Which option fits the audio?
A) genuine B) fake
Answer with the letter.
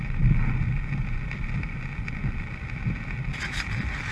A